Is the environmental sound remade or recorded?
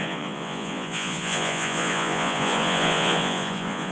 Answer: remade